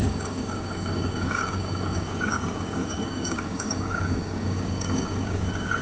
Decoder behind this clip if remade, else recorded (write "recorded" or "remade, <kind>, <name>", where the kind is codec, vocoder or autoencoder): remade, codec, DAC